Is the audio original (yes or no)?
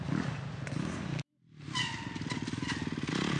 yes